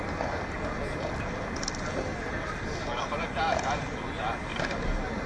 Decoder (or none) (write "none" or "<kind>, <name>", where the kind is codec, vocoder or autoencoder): none